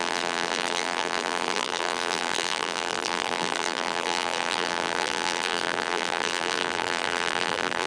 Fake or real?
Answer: fake